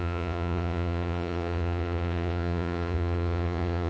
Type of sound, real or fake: fake